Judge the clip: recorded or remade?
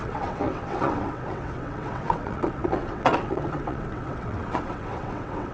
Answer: remade